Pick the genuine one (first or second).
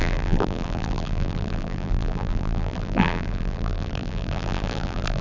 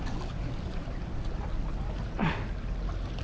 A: second